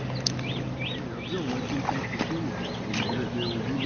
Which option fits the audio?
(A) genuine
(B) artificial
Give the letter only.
A